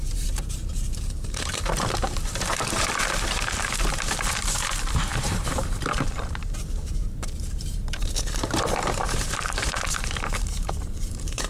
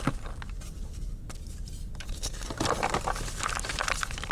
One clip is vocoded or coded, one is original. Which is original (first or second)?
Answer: second